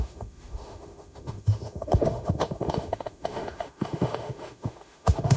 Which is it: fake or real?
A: fake